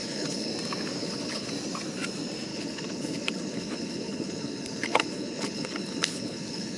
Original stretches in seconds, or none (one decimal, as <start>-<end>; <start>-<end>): 0.5-1.0; 1.5-2.5